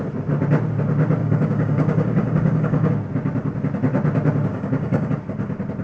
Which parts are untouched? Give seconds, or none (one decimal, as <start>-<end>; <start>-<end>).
0.0-1.2; 2.9-4.5; 5.1-5.8